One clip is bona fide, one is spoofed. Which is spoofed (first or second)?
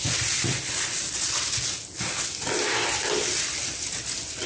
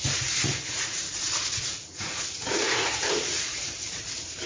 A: second